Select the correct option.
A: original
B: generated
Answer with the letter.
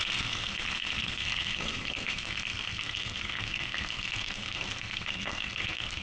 B